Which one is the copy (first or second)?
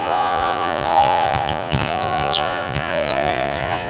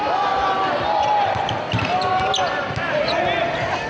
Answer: first